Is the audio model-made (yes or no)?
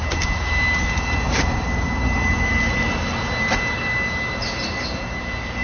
no